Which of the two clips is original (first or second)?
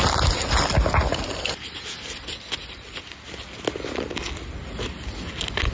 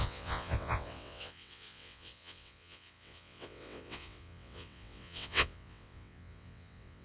first